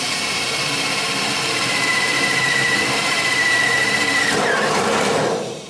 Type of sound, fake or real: fake